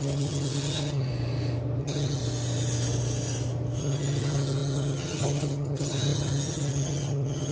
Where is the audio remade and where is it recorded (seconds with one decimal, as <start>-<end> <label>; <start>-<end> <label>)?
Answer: 0.0-1.1 remade; 1.1-1.8 recorded; 1.8-2.2 remade; 2.2-3.8 recorded; 3.8-7.5 remade